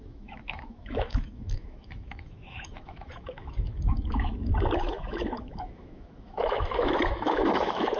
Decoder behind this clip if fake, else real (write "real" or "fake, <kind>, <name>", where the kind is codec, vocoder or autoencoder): fake, autoencoder, DAC-VAE